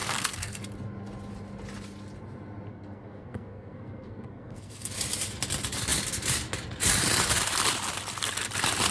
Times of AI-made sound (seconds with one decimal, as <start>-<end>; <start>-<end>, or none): 0.0-0.6; 2.7-4.9